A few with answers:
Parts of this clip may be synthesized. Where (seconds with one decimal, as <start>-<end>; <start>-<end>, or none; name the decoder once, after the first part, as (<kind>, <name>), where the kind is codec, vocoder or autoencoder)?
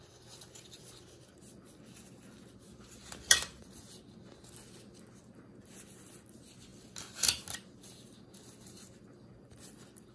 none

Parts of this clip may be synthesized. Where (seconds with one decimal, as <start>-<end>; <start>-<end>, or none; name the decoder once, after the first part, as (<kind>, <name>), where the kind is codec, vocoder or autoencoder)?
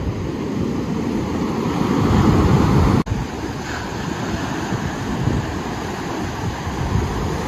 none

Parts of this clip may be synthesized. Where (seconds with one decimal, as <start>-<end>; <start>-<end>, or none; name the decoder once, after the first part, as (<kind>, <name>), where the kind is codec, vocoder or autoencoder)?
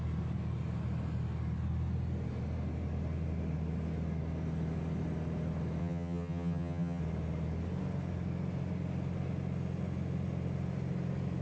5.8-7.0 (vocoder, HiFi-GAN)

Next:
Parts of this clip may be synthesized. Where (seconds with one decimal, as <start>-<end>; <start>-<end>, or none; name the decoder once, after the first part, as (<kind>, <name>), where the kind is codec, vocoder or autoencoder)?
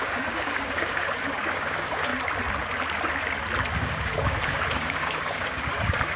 0.0-2.1 (codec, DAC); 3.7-6.2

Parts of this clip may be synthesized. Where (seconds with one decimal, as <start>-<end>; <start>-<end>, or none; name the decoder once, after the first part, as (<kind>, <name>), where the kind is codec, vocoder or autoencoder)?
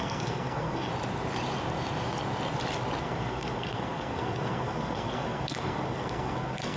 0.0-0.9 (codec, SNAC); 3.0-6.8